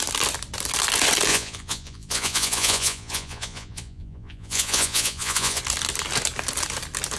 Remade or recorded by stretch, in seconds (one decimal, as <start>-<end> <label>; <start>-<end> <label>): 0.0-1.3 recorded; 1.3-5.6 remade; 5.6-7.2 recorded